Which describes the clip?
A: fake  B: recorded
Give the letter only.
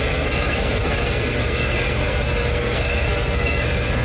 A